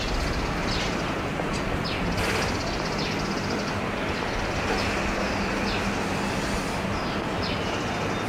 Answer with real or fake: real